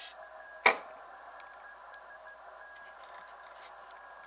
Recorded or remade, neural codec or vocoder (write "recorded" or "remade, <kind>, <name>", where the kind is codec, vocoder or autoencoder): recorded